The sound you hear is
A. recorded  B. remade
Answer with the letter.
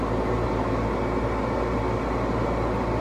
A